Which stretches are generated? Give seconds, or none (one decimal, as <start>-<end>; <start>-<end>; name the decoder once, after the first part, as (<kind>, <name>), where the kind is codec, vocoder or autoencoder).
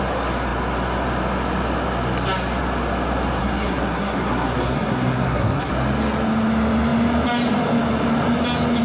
3.4-5.7 (codec, SNAC)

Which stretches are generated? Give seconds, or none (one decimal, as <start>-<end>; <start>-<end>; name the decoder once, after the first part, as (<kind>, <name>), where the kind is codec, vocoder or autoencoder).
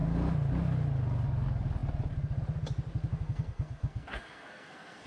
3.1-5.1 (codec, SNAC)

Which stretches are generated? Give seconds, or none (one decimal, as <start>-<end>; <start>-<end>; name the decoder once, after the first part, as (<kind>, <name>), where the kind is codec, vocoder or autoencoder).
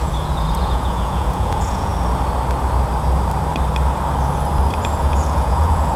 0.0-1.9 (vocoder, Vocos); 4.8-6.0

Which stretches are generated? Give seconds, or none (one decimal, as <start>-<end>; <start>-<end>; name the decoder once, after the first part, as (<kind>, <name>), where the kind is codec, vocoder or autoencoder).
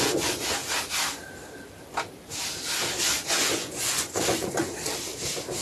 0.0-0.6 (vocoder, Vocos); 3.0-4.8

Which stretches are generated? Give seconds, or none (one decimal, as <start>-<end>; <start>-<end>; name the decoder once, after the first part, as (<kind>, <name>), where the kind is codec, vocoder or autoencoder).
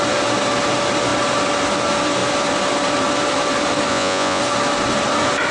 3.9-4.4 (vocoder, Vocos)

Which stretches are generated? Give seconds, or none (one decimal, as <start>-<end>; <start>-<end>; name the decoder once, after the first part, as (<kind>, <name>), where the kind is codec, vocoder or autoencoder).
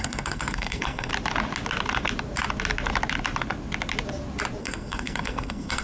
0.0-1.1 (codec, SNAC); 4.6-5.8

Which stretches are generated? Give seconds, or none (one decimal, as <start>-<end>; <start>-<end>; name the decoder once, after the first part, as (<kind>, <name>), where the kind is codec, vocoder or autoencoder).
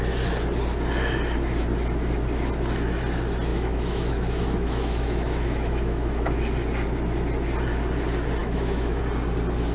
3.5-6.4 (autoencoder, DAC-VAE); 8.4-9.0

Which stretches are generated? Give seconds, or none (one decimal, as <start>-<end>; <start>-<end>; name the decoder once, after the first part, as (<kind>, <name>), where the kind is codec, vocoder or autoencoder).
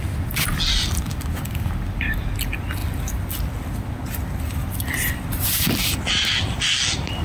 none